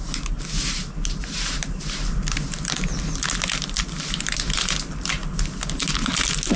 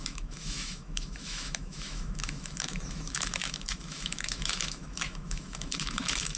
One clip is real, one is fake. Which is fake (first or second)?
second